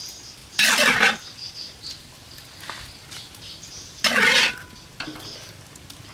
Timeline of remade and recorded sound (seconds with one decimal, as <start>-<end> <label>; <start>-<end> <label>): 0.0-6.1 recorded